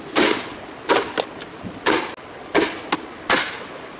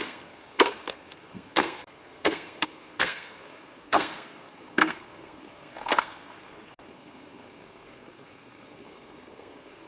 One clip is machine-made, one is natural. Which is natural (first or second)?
first